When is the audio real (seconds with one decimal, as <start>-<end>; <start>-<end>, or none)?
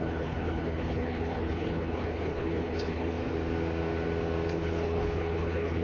3.2-4.5